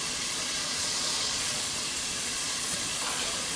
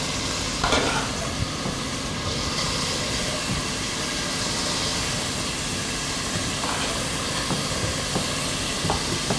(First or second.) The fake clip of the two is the first